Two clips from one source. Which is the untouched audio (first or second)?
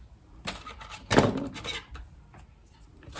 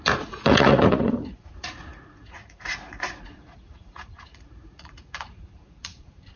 first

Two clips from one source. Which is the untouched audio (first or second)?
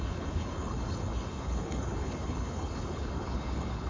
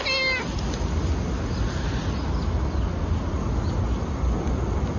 second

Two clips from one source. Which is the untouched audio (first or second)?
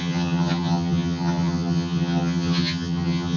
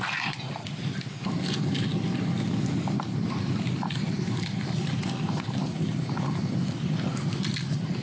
second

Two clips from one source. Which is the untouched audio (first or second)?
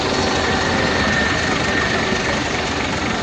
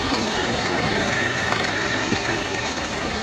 first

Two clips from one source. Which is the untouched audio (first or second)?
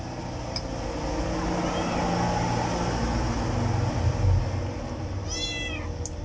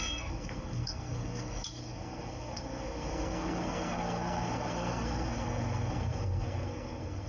first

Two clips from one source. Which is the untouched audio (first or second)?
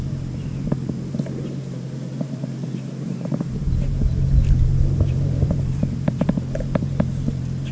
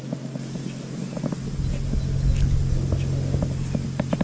second